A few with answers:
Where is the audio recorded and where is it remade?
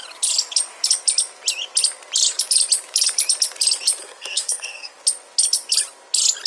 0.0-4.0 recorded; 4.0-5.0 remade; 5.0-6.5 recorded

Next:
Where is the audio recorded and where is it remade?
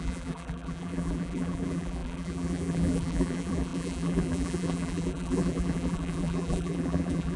0.0-7.4 remade